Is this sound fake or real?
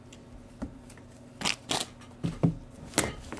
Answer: real